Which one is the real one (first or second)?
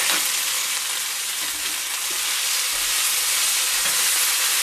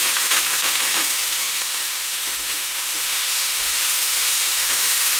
first